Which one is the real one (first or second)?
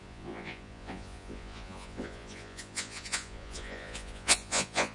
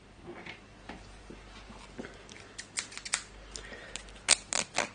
second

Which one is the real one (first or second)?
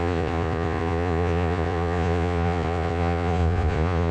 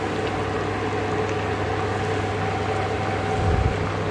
second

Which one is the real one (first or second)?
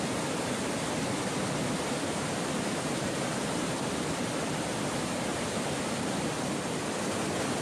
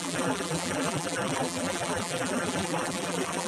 first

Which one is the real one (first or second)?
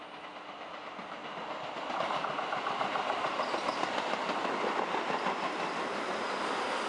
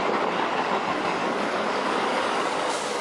first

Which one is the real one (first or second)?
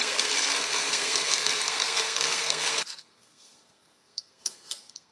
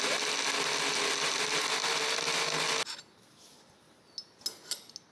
second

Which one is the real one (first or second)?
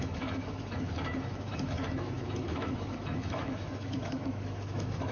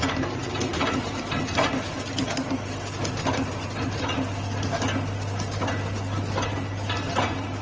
second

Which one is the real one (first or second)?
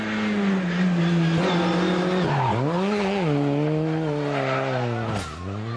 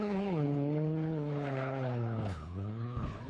first